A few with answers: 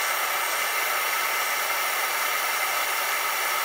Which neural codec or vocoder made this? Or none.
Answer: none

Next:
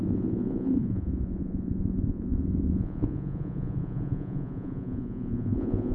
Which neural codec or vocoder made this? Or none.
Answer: vocoder, Vocos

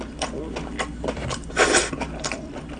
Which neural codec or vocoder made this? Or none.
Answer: none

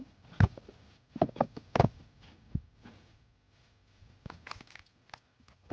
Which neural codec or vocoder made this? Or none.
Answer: none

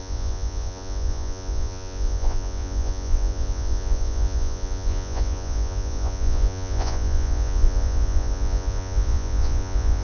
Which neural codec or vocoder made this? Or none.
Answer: vocoder, Vocos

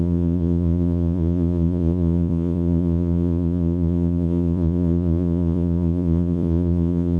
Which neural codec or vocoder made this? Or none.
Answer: vocoder, Vocos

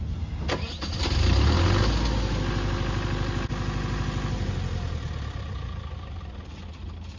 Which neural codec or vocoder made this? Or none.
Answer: none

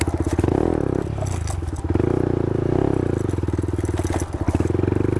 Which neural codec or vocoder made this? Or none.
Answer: none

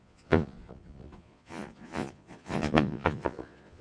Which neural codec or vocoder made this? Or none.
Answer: vocoder, Vocos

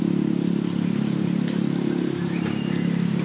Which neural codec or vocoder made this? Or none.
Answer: none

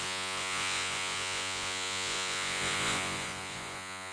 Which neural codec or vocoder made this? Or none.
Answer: vocoder, Vocos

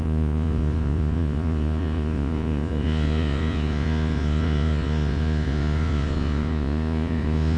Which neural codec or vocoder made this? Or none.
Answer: vocoder, Vocos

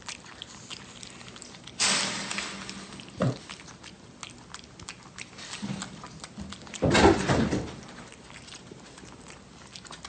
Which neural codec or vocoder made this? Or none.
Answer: none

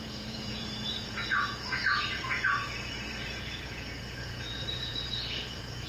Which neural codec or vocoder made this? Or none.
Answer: vocoder, Vocos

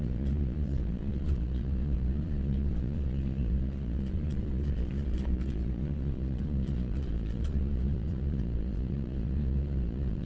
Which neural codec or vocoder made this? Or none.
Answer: vocoder, Vocos